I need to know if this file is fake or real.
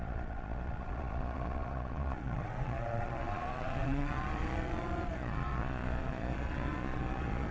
fake